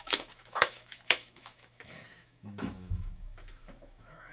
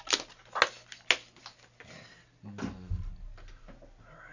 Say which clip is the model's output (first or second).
first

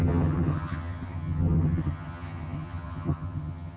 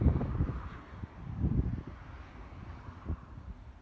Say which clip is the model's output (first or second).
first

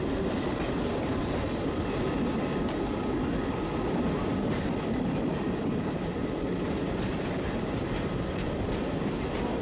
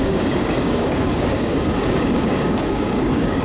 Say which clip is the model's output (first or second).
second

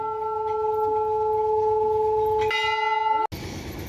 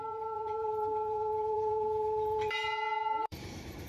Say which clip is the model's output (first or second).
second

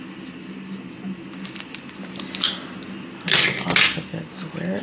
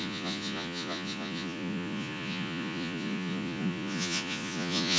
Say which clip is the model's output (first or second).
second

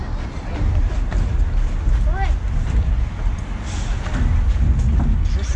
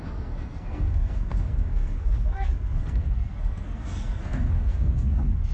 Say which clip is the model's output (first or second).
second